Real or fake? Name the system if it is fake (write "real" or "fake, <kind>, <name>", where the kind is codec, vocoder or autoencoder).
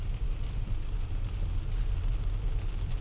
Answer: real